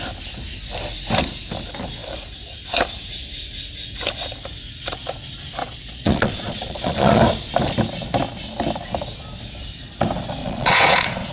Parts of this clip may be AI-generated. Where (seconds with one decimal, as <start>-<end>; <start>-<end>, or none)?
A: 5.6-7.2; 10.4-11.3